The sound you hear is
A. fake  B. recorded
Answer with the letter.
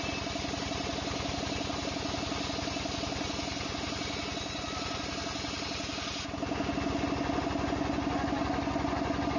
B